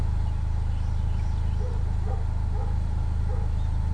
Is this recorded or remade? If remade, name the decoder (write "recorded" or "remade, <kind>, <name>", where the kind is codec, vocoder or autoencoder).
recorded